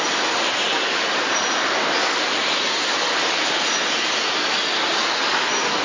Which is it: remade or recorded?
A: recorded